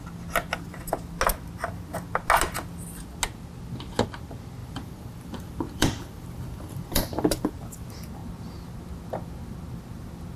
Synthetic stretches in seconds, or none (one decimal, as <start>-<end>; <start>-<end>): 4.6-7.5

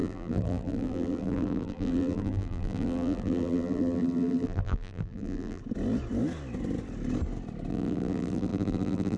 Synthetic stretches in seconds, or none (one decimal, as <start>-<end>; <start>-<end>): 0.0-5.6; 7.7-9.2

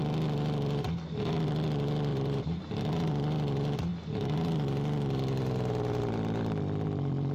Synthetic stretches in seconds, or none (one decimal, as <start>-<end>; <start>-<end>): 2.1-2.7

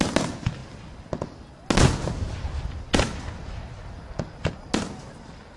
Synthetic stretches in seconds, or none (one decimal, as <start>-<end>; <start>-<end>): none

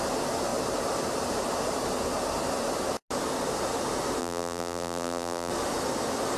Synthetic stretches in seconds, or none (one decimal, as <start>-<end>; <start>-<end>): 4.2-5.5